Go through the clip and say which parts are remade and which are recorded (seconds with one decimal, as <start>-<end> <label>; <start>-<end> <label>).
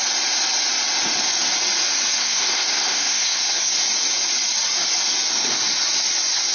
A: 0.0-2.2 recorded; 2.2-3.7 remade; 3.7-6.5 recorded